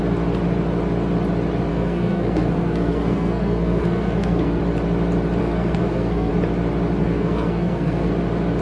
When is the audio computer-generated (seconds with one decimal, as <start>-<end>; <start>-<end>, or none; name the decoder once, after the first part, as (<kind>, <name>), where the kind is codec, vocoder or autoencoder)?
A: 1.7-4.6 (codec, SNAC); 5.4-6.3; 7.0-8.1